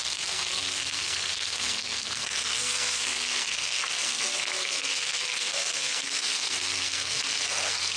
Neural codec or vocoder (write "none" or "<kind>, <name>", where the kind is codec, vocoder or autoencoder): codec, SNAC